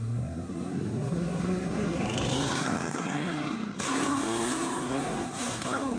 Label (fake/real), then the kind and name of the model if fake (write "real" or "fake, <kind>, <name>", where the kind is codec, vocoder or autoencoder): fake, codec, SNAC